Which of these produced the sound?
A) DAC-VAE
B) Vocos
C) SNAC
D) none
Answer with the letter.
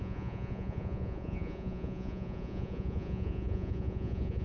B